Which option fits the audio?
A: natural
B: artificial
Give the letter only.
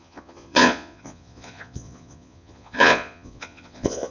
B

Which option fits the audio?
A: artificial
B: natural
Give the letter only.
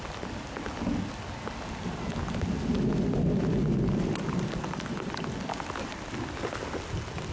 B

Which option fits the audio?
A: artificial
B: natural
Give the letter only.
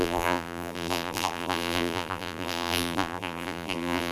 A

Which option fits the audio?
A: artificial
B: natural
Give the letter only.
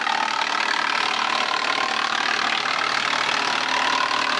B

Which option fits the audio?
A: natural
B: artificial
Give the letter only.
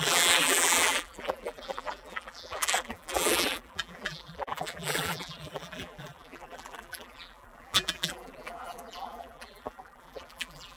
B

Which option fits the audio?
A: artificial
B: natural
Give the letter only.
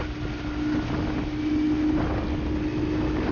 B